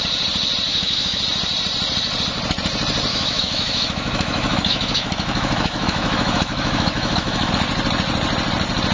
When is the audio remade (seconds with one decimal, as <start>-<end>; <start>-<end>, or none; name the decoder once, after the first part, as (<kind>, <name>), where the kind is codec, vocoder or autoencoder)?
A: 0.7-1.2 (autoencoder, DAC-VAE); 3.1-7.5